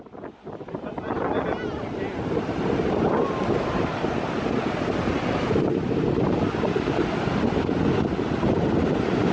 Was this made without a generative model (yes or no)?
yes